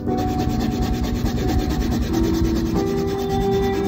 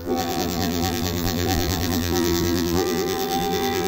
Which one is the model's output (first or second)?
second